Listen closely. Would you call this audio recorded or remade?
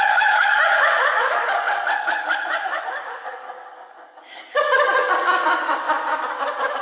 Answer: remade